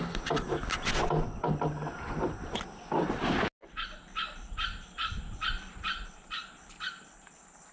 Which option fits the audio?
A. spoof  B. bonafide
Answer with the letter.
B